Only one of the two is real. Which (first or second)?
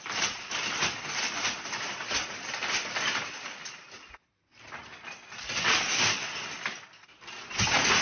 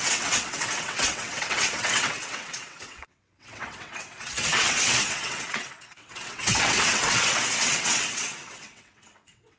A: first